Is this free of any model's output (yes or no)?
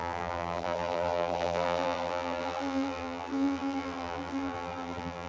no